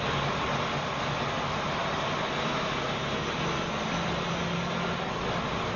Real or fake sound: real